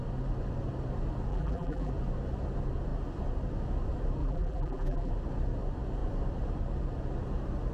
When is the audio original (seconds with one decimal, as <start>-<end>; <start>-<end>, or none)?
0.0-1.3; 1.9-4.2; 5.1-7.7

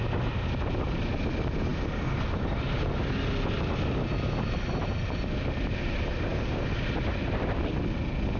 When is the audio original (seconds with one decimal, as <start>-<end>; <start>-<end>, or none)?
0.0-8.4

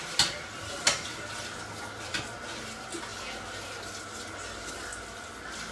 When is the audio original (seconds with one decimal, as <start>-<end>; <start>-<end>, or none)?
0.0-5.7

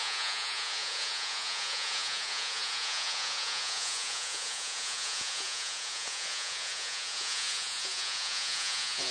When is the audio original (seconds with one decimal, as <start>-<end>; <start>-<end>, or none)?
none